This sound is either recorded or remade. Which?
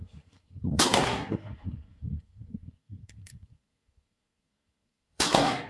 remade